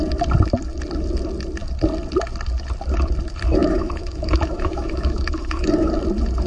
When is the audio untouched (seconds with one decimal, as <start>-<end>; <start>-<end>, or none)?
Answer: 0.0-3.6; 5.9-6.5